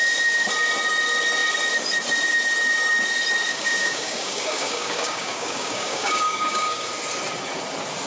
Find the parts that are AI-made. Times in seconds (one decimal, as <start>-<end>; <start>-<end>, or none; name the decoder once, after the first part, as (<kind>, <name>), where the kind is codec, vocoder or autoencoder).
3.5-6.9 (codec, DAC)